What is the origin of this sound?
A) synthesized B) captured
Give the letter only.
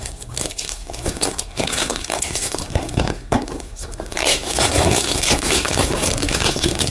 A